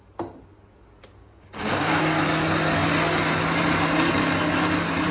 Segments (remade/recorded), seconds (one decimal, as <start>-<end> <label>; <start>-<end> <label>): 0.0-1.2 recorded; 1.2-2.2 remade; 2.2-5.1 recorded